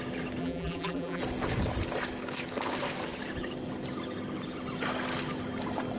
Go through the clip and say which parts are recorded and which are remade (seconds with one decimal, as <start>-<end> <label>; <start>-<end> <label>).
0.0-0.4 recorded; 0.4-1.2 remade; 1.2-6.0 recorded